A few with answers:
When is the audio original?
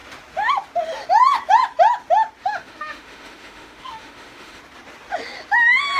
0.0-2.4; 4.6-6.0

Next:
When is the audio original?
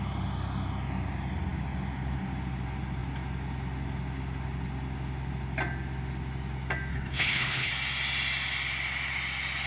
0.0-6.9; 7.7-9.7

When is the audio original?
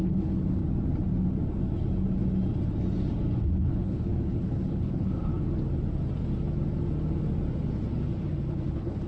0.6-3.6; 5.3-8.5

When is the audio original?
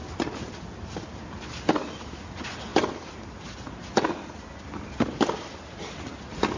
0.0-6.6